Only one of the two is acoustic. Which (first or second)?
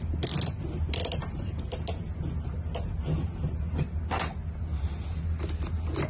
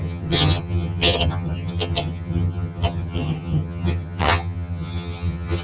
first